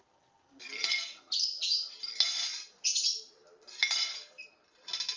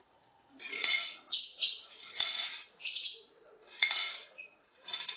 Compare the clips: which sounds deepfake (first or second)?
second